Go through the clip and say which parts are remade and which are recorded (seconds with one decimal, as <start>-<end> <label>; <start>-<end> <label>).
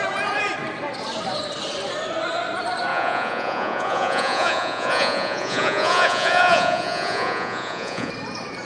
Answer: 0.0-2.9 recorded; 2.9-8.1 remade; 8.1-8.6 recorded